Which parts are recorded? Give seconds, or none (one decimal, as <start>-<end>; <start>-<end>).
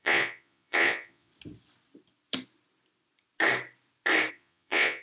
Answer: 1.3-4.3